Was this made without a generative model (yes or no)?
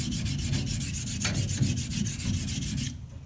yes